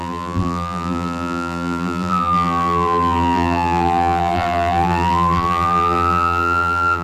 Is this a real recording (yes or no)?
no